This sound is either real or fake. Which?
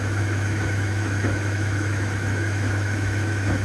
fake